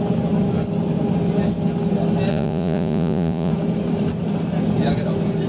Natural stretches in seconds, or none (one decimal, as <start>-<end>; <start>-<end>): 0.0-2.3; 3.5-5.5